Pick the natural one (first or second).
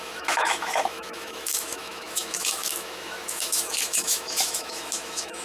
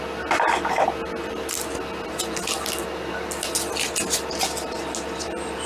second